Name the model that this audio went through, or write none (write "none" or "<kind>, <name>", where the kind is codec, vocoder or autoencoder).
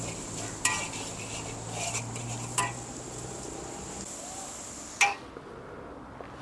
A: none